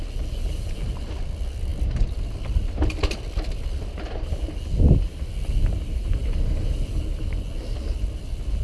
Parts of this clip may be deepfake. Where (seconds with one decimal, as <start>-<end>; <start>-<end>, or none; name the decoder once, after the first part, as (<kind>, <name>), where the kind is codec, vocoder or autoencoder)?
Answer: none